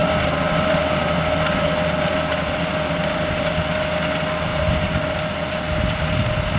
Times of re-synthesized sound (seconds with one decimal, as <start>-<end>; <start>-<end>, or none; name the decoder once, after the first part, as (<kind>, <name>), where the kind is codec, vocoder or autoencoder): 0.0-3.4 (vocoder, BigVGAN v2); 4.5-5.2